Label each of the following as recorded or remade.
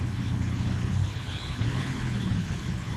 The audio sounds remade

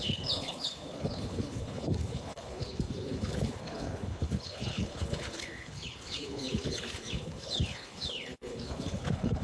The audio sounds remade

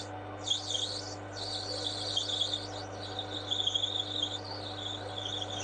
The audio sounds recorded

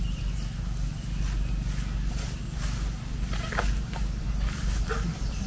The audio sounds recorded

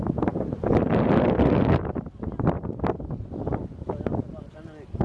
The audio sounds recorded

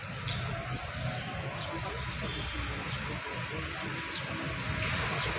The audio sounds recorded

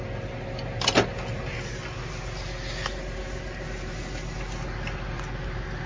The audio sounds recorded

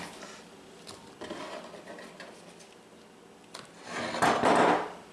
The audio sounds recorded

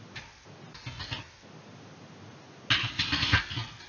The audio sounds recorded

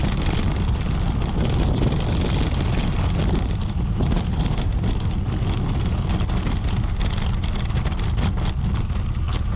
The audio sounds recorded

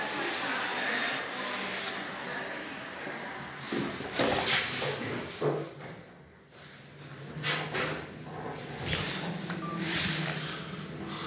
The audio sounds recorded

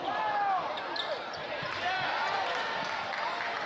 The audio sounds recorded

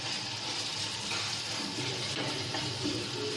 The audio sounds recorded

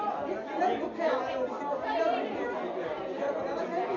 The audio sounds recorded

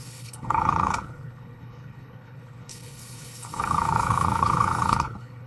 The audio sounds remade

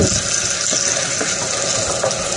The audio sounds recorded